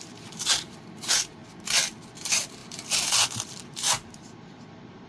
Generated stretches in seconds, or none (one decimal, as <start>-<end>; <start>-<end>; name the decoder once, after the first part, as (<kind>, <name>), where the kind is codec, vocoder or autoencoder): 0.0-1.4 (vocoder, BigVGAN v2); 2.1-5.1